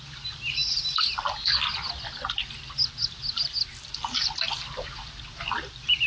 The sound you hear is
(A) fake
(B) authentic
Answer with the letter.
B